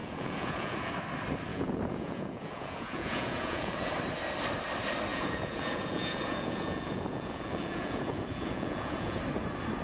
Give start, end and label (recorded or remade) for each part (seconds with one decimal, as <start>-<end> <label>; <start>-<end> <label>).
0.0-0.9 remade; 0.9-1.5 recorded; 1.5-3.9 remade; 3.9-5.1 recorded; 5.1-9.2 remade; 9.2-9.8 recorded